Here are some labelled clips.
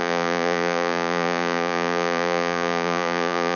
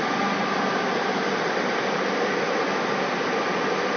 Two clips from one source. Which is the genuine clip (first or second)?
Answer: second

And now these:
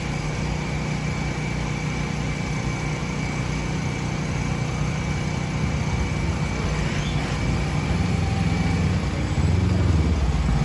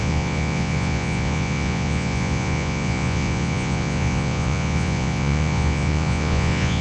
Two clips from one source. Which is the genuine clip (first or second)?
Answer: first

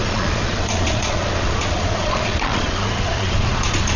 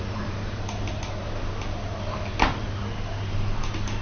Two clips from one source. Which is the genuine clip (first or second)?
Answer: second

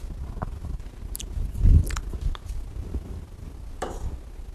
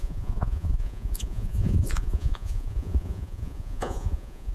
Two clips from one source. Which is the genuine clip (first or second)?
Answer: first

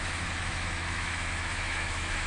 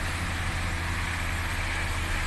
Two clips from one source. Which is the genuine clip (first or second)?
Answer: second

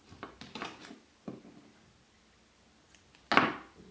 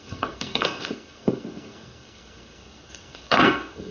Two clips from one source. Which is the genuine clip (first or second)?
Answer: first